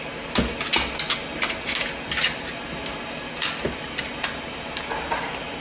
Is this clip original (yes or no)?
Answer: yes